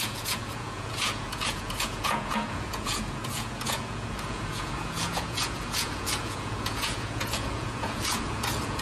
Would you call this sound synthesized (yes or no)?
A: yes